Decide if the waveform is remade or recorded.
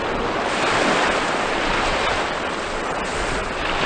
recorded